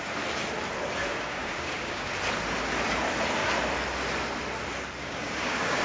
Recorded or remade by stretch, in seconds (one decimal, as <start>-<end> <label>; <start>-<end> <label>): 0.0-1.1 recorded; 1.1-2.1 remade; 2.1-5.0 recorded; 5.0-5.8 remade